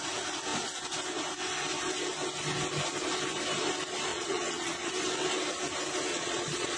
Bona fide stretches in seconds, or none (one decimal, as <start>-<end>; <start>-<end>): 0.0-4.1; 4.9-6.1

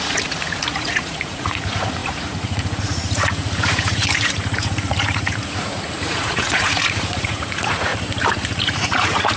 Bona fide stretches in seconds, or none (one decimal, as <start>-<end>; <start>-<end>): 7.9-8.6

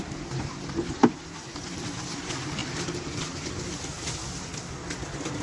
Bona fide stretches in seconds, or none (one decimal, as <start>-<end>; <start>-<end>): 0.0-5.4